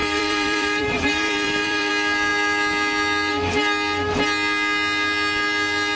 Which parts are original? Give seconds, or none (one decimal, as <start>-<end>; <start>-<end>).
1.9-6.0